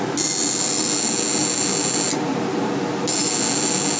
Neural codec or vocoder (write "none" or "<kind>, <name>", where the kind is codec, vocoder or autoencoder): none